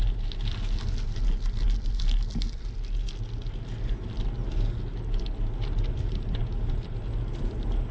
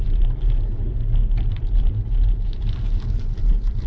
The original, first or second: first